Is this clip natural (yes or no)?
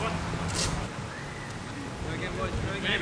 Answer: yes